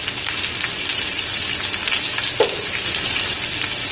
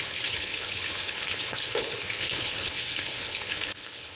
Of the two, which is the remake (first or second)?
second